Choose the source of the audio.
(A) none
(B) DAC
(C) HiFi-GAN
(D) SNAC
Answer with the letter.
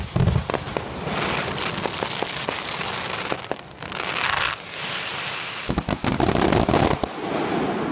A